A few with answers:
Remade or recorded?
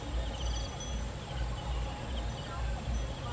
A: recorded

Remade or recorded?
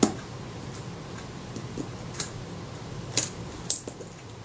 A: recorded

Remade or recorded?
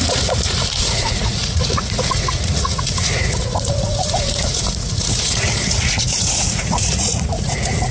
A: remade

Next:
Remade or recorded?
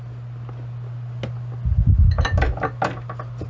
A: recorded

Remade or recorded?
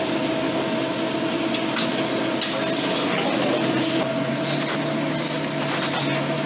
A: recorded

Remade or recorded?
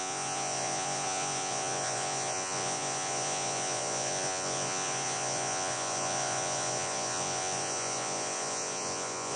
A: remade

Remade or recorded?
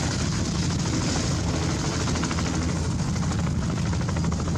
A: recorded